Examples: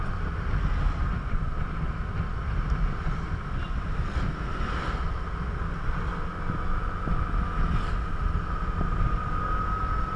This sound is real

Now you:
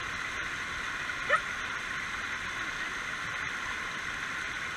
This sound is real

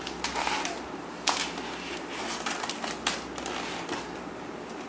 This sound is real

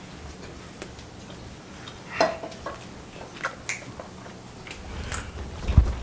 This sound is real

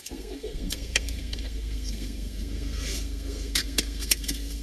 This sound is fake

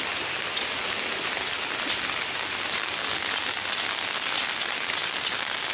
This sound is real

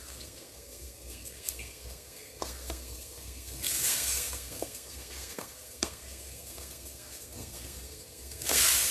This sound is fake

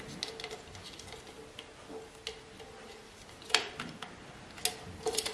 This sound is real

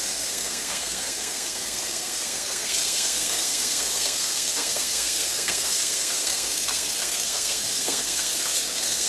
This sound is fake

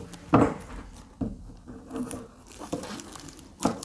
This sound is real